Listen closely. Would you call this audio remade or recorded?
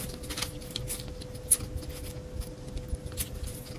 recorded